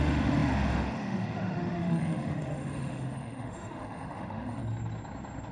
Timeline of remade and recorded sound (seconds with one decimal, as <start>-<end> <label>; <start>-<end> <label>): 0.0-4.6 remade; 4.6-5.5 recorded